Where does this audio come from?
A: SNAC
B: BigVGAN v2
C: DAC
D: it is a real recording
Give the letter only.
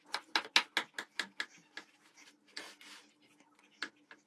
D